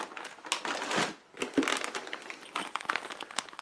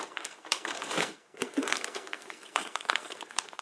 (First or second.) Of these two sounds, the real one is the first